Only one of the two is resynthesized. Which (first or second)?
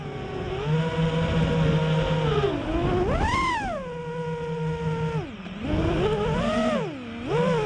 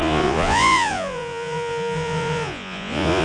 second